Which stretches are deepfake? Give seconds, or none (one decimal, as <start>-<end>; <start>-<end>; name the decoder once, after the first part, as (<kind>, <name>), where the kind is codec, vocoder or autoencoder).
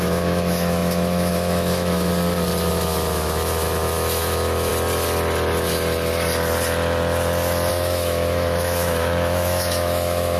0.0-2.1 (autoencoder, DAC-VAE); 2.7-4.7; 7.7-10.4